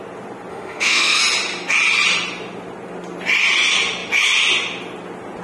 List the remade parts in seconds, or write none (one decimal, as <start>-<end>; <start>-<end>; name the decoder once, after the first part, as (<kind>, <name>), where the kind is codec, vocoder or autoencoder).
0.5-1.2 (autoencoder, DAC-VAE)